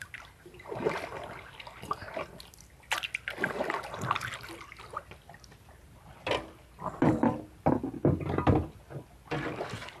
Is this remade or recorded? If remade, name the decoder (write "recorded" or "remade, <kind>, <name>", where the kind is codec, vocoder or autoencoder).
recorded